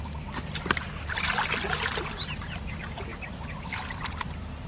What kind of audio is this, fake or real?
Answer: fake